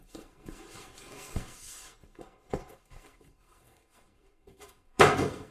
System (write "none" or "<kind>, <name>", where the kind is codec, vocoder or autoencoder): codec, SNAC